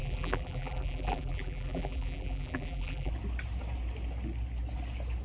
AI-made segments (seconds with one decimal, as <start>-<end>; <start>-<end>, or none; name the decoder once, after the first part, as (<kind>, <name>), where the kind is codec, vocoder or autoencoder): 0.0-3.1 (vocoder, BigVGAN v2)